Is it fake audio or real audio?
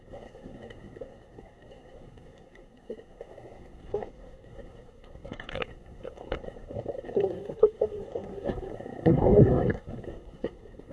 fake